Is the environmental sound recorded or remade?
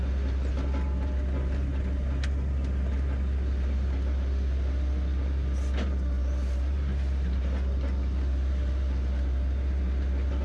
recorded